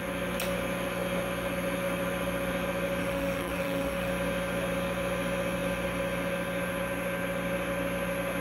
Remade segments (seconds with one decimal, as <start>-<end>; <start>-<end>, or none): 3.0-4.1